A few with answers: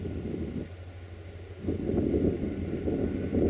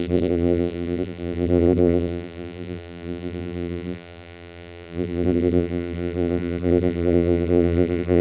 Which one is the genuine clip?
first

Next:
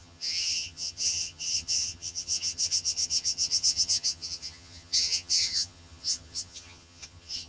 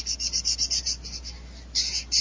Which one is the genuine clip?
second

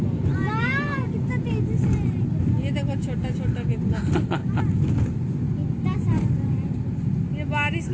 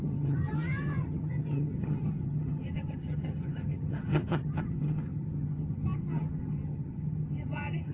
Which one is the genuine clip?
first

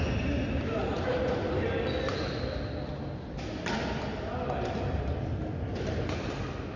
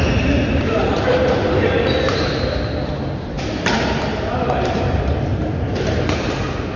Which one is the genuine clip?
first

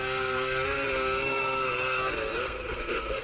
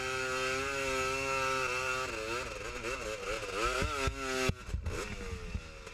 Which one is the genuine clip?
second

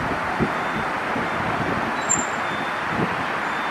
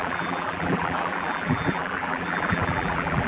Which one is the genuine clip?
first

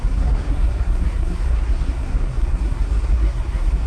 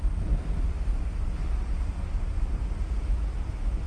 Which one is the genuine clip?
second